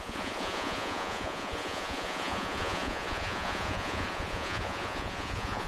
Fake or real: fake